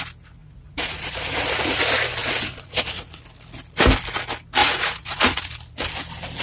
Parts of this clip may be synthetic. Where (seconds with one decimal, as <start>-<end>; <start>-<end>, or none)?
0.4-1.8; 2.2-3.2; 4.6-5.5